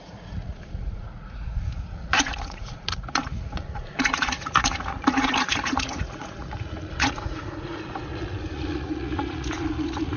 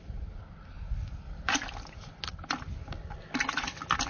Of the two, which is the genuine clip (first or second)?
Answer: second